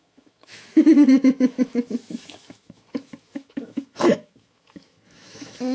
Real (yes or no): no